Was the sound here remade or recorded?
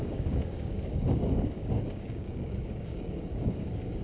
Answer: remade